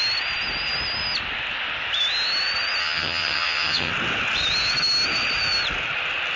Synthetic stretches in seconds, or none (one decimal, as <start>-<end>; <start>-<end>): 2.8-3.9